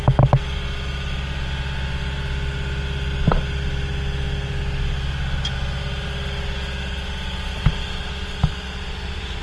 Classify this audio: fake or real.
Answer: real